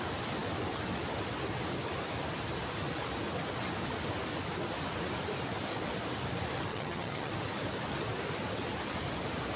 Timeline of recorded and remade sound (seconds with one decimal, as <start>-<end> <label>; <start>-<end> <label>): 0.0-6.7 recorded; 6.7-7.3 remade; 7.3-9.6 recorded